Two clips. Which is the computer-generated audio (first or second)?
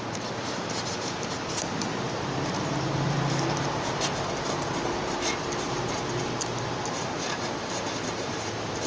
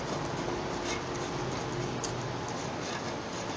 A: first